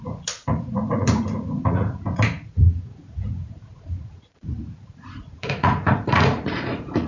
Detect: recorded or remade remade